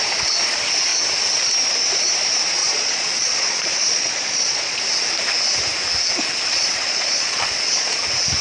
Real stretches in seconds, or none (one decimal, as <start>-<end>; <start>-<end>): 0.0-2.6; 4.8-6.5; 8.0-8.4